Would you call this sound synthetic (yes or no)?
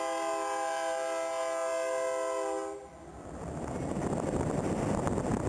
no